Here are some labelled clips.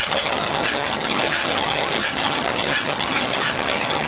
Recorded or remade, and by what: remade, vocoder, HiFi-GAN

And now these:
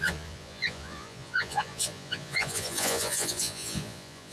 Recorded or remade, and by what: remade, vocoder, Vocos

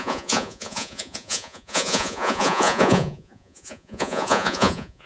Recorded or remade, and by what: remade, vocoder, Vocos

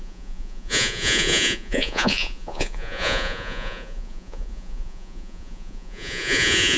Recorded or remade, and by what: remade, vocoder, Vocos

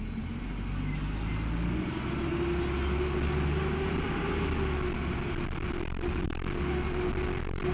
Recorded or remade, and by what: recorded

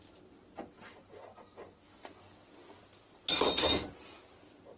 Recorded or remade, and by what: recorded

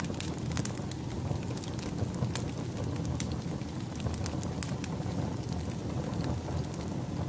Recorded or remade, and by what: recorded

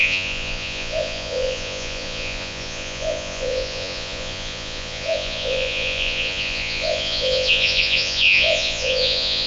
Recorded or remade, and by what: remade, vocoder, Vocos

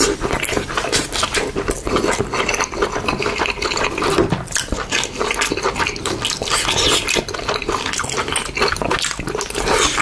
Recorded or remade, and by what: recorded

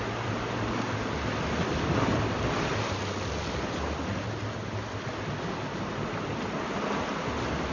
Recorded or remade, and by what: recorded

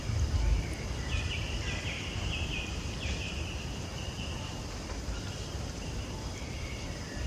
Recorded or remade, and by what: remade, vocoder, BigVGAN v2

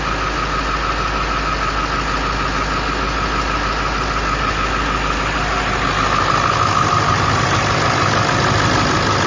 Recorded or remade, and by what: recorded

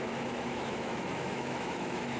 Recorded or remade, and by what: remade, autoencoder, DAC-VAE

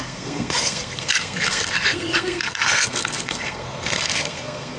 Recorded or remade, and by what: remade, codec, SNAC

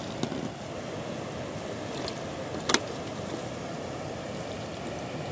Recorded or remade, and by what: recorded